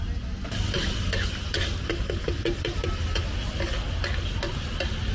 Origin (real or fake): real